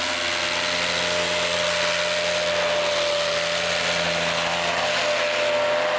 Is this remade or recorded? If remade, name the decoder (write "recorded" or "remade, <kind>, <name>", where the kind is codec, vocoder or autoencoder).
recorded